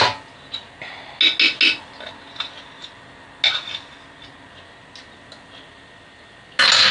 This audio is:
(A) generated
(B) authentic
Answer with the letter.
B